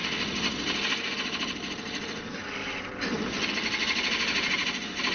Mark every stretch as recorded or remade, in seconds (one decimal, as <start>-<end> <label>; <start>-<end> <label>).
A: 0.0-5.1 recorded